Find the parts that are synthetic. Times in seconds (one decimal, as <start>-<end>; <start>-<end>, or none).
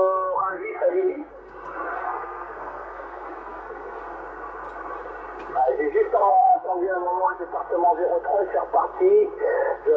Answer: 0.5-1.3; 2.0-4.0; 6.2-7.4